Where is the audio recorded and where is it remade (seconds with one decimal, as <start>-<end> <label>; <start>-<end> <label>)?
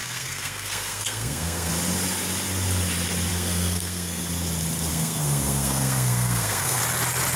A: 0.0-1.7 remade; 1.7-3.3 recorded; 3.3-4.2 remade; 4.2-4.9 recorded; 4.9-6.8 remade; 6.8-7.4 recorded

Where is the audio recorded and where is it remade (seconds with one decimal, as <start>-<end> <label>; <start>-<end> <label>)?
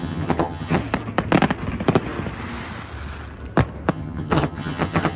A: 0.0-0.8 remade; 0.8-3.9 recorded; 3.9-5.2 remade